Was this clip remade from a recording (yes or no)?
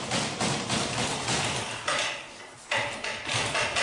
no